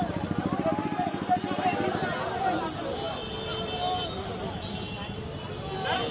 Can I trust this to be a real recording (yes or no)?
yes